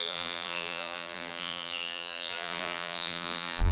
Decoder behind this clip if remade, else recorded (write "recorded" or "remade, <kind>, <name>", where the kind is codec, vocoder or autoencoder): remade, vocoder, BigVGAN v2